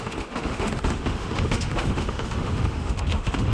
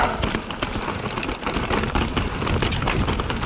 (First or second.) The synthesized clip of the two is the first